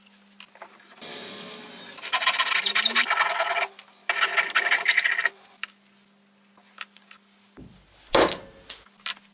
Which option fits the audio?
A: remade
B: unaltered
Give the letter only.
B